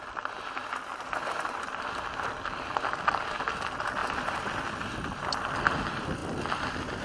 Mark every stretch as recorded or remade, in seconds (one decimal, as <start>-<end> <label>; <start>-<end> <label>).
0.0-7.0 recorded